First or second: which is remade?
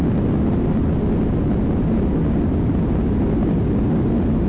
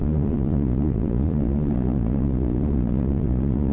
second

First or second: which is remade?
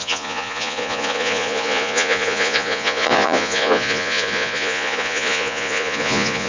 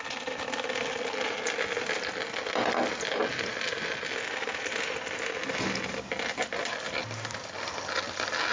first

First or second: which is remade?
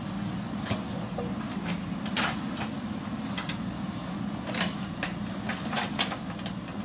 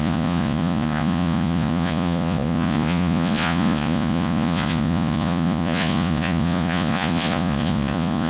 second